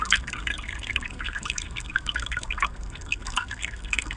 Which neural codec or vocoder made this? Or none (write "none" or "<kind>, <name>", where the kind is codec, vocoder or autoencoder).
codec, SNAC